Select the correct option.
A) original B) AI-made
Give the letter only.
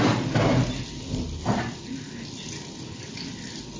A